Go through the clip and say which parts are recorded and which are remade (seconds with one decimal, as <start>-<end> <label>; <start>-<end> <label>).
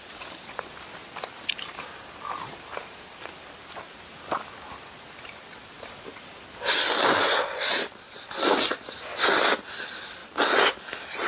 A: 0.0-11.3 recorded